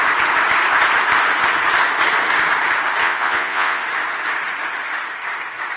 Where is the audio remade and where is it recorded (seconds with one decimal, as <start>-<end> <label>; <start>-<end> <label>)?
0.0-3.0 recorded; 3.0-3.8 remade; 3.8-5.8 recorded